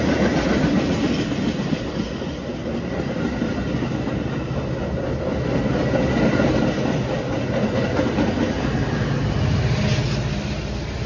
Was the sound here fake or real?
real